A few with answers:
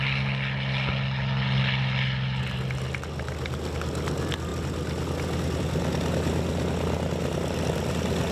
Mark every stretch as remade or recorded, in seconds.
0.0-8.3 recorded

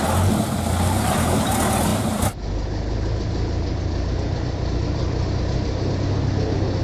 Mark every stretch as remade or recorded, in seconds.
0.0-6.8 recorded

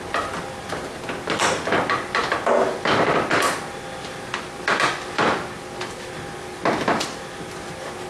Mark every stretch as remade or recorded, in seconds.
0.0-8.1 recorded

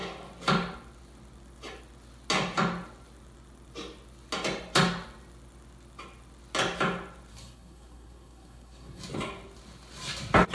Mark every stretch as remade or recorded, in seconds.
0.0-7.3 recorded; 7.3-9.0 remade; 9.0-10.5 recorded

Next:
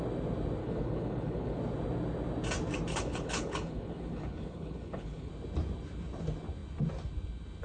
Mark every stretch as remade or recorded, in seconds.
0.0-0.6 recorded; 0.6-1.6 remade; 1.6-2.9 recorded; 2.9-5.3 remade; 5.3-7.6 recorded